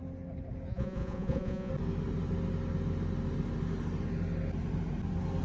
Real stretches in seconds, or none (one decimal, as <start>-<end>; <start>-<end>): 0.0-0.7; 1.7-5.4